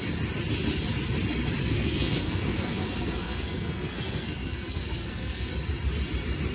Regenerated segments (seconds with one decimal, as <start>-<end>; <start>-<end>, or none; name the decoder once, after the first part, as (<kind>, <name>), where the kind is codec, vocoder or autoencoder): 1.6-5.5 (codec, SNAC)